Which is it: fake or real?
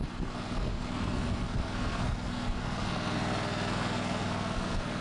fake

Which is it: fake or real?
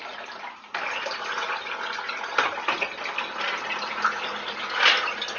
real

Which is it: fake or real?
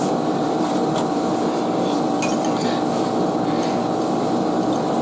real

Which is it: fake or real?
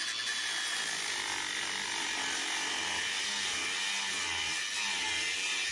real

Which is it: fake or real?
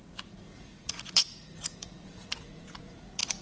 fake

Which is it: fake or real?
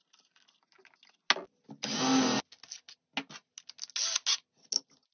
real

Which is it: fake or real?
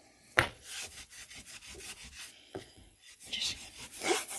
fake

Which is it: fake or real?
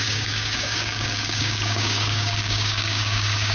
fake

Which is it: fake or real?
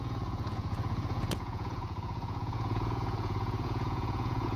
fake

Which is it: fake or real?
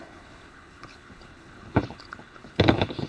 fake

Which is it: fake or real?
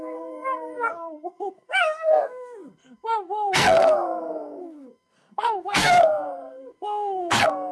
fake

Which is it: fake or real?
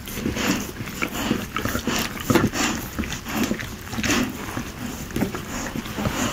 real